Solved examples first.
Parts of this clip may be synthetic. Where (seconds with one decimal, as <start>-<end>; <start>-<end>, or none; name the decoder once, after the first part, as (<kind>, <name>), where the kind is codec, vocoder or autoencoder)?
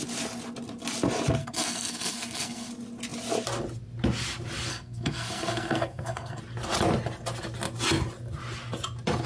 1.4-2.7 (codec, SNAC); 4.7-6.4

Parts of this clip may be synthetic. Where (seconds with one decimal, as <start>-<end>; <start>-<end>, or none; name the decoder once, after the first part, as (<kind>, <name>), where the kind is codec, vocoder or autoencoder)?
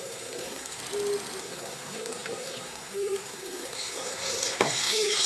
0.0-0.8 (codec, SNAC); 1.4-5.3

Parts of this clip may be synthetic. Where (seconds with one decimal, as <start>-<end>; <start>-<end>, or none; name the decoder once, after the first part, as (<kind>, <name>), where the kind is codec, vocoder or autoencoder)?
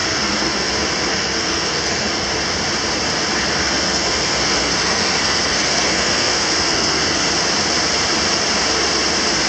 0.0-0.7 (codec, SNAC); 1.1-2.3; 3.6-7.3